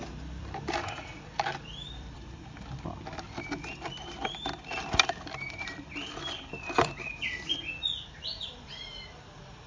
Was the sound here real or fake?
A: fake